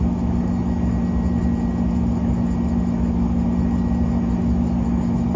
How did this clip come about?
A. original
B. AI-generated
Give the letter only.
A